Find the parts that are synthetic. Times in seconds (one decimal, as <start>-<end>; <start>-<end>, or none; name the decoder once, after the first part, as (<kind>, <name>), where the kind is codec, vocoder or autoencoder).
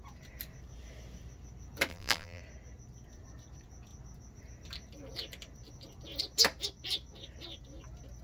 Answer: 1.9-2.4 (vocoder, BigVGAN v2)